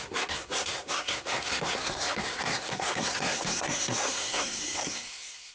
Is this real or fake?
fake